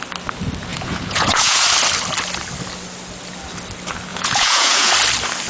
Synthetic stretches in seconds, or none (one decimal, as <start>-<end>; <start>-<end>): 0.7-1.6; 4.1-4.9